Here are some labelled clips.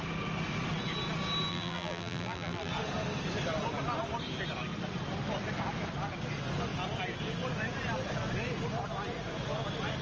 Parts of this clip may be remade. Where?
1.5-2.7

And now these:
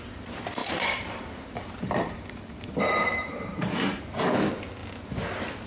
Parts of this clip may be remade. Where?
0.6-4.0